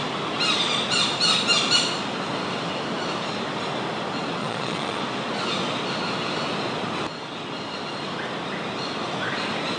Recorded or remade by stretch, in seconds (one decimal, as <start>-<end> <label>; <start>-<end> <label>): 0.0-4.4 recorded; 4.4-5.0 remade; 5.0-9.8 recorded

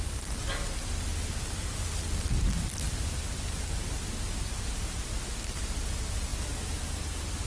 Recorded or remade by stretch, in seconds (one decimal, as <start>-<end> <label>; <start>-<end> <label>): 0.0-7.5 recorded

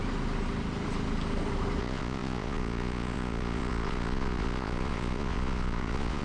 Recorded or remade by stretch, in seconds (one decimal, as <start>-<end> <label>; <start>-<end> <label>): 0.0-1.8 recorded; 1.8-6.2 remade